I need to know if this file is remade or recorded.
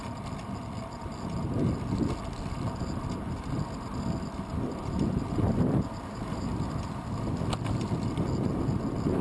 recorded